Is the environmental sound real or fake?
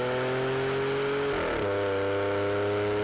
real